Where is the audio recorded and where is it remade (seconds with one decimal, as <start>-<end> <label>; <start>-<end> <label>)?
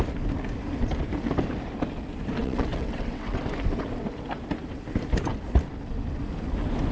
0.0-2.4 recorded; 2.4-3.4 remade; 3.4-6.9 recorded